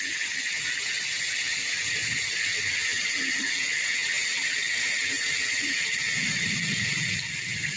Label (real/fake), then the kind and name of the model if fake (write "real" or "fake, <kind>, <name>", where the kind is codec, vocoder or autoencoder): real